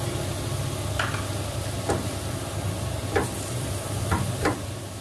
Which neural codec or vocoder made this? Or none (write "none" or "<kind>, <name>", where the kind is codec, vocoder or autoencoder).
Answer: none